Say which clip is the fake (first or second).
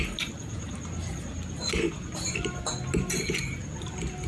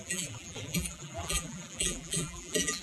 second